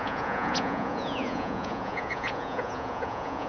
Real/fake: fake